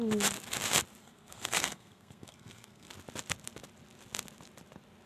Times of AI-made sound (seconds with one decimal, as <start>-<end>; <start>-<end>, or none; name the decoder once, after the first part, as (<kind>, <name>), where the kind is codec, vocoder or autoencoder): 1.0-2.9 (codec, SNAC)